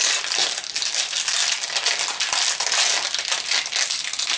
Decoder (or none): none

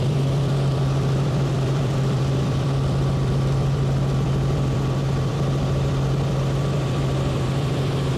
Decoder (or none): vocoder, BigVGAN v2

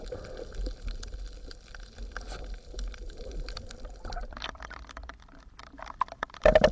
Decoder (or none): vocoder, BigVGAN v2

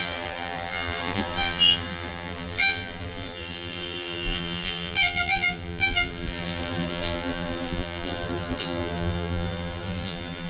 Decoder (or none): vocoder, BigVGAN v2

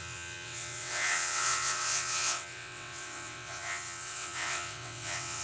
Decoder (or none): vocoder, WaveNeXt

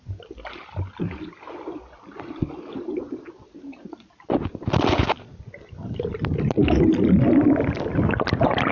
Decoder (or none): none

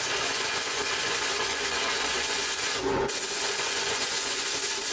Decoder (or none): vocoder, Vocos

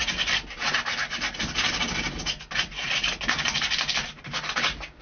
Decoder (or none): none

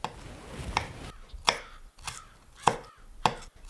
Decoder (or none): none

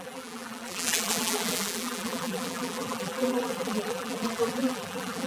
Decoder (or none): vocoder, BigVGAN v2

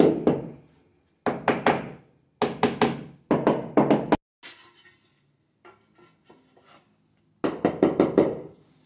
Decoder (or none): none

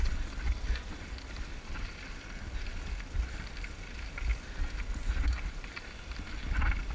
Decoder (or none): none